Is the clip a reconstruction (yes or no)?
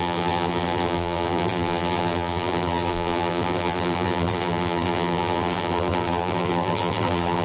yes